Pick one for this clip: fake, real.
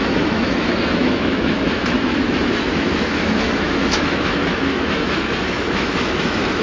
fake